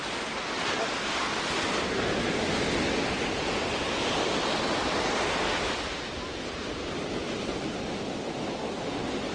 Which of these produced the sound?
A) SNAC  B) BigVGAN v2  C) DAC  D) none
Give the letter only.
D